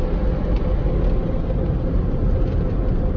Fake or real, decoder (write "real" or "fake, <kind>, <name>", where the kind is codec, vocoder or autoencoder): real